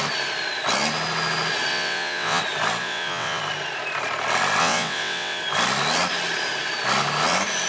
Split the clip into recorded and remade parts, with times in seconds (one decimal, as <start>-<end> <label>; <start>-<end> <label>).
0.0-1.7 recorded; 1.7-2.4 remade; 2.4-2.8 recorded; 2.8-3.4 remade; 3.4-4.6 recorded; 4.6-5.4 remade; 5.4-7.7 recorded